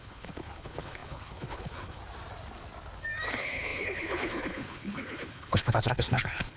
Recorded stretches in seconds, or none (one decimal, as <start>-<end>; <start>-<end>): 2.0-3.3

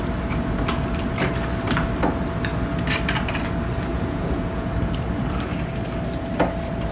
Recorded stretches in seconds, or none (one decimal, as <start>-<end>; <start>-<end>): 0.0-3.9; 4.7-6.9

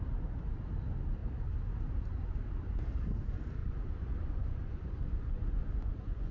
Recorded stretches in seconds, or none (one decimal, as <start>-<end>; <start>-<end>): 0.0-3.6

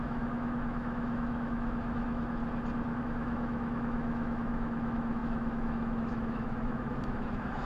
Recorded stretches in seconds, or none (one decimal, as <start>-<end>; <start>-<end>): 2.4-3.0

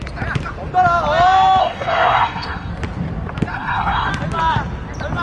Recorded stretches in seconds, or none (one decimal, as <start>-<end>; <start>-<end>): 0.0-1.6; 2.7-3.5; 4.1-5.2

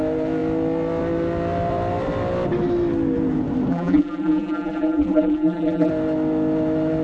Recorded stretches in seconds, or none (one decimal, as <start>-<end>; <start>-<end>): 0.0-3.7; 5.9-7.0

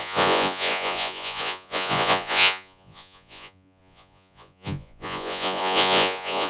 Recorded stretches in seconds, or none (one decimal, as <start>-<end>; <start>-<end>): none

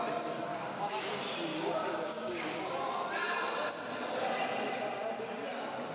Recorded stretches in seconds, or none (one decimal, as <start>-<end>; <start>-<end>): 0.0-0.5; 1.1-1.5; 2.6-5.9